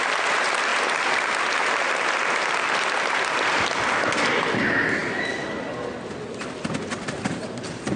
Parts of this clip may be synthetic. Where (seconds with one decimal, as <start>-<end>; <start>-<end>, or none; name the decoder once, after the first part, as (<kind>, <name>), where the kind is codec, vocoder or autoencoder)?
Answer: none